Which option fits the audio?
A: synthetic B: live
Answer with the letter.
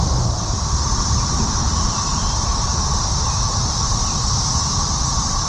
A